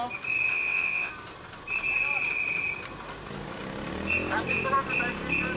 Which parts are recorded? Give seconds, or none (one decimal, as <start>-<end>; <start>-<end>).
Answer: 0.0-0.5; 1.1-5.6